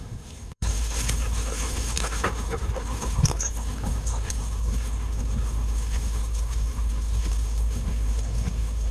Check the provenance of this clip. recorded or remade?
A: remade